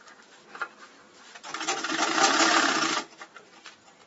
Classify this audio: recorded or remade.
recorded